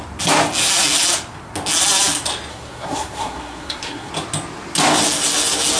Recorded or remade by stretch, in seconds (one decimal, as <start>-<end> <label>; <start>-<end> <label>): 0.0-2.5 recorded; 2.5-4.1 remade; 4.1-5.8 recorded